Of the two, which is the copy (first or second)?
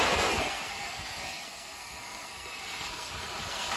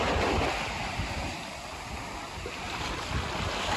first